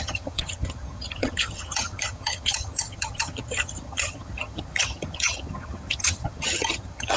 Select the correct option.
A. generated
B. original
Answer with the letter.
A